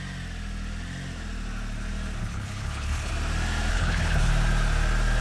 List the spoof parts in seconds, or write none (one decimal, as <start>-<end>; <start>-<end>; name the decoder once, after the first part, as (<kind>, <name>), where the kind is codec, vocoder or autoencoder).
2.2-3.1 (codec, HILCodec); 3.7-4.3